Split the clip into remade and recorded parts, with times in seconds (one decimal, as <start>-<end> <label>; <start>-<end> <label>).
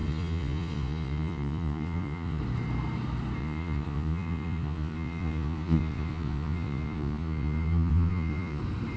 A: 0.0-2.4 remade; 2.4-3.4 recorded; 3.4-8.6 remade; 8.6-9.0 recorded